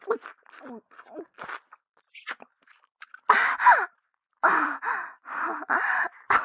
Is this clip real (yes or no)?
yes